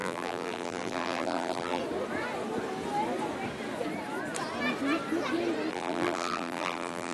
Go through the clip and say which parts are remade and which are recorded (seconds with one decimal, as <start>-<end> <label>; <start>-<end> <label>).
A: 0.0-1.8 remade; 1.8-5.7 recorded; 5.7-7.1 remade